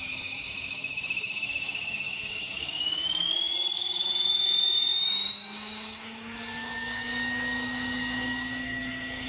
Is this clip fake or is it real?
fake